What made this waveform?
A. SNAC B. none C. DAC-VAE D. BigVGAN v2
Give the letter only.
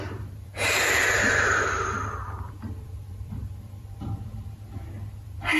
D